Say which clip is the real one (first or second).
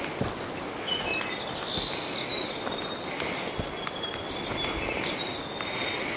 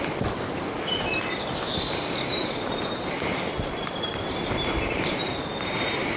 first